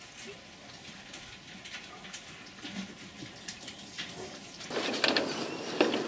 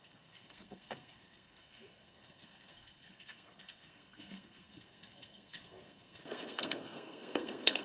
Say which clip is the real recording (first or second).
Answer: first